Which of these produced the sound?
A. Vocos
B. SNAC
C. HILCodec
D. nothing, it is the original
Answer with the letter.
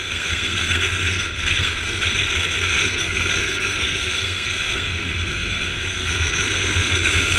B